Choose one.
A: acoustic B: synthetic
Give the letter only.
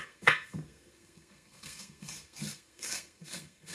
B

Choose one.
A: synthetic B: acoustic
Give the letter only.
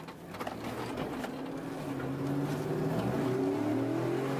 B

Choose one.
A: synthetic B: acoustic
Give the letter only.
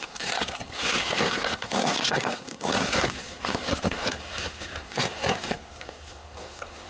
A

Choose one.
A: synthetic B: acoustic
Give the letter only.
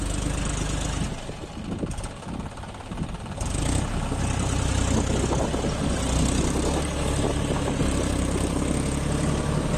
B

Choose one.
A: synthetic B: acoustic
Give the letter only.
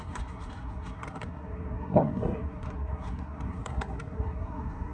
A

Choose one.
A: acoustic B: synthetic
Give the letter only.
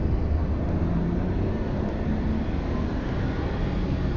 A